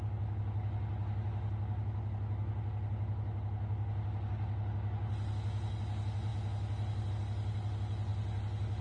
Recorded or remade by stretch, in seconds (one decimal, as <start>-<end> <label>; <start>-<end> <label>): 0.0-8.8 recorded

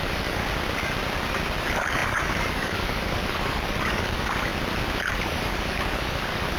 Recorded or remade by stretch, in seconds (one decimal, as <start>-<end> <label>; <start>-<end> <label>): 0.0-0.4 remade; 0.4-1.6 recorded; 1.6-4.5 remade; 4.5-5.1 recorded; 5.1-6.6 remade

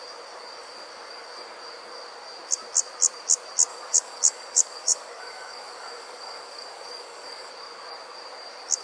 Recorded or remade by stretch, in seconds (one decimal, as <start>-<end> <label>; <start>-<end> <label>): 0.0-3.7 recorded; 3.7-7.5 remade; 7.5-8.8 recorded

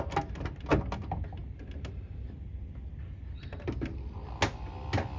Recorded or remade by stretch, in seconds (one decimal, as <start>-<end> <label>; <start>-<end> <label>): 0.0-5.2 recorded

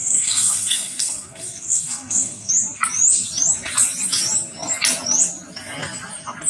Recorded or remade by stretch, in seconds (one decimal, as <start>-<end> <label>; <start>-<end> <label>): 0.0-2.5 remade; 2.5-6.5 recorded

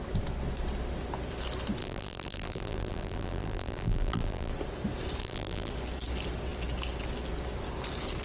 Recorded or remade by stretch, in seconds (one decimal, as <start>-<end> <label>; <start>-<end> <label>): 0.0-1.8 recorded; 1.8-4.5 remade; 4.5-5.2 recorded; 5.2-5.7 remade; 5.7-8.2 recorded

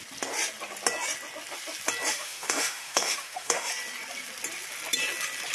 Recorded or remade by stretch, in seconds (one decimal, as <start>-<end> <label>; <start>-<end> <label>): 0.0-2.1 recorded; 2.1-3.7 remade; 3.7-5.5 recorded

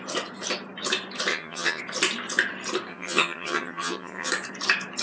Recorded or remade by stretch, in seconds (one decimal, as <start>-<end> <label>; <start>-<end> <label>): 0.0-1.3 recorded; 1.3-1.8 remade; 1.8-2.9 recorded; 2.9-4.3 remade; 4.3-5.0 recorded